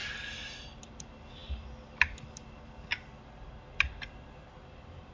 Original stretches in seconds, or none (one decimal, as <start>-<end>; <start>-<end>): 0.0-5.1